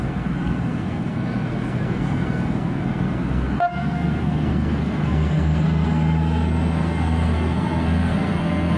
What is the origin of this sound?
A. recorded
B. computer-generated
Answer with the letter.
B